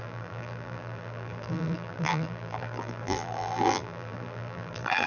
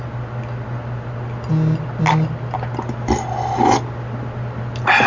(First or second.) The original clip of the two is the second